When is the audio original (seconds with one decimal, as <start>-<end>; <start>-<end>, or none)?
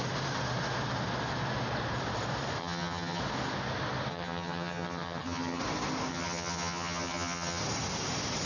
0.0-2.6; 3.2-4.1; 5.6-6.1; 7.6-8.5